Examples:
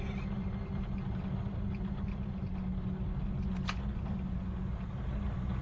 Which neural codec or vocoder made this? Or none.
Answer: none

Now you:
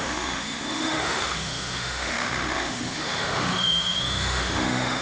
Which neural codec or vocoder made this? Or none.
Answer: autoencoder, DAC-VAE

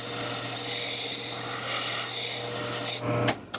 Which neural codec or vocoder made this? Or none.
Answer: none